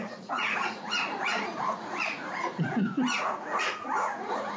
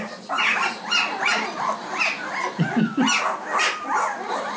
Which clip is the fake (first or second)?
first